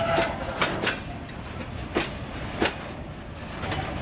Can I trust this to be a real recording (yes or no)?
yes